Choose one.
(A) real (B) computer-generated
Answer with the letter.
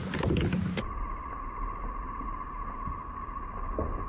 A